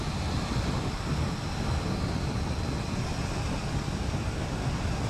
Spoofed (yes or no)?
no